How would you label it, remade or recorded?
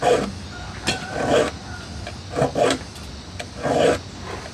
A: recorded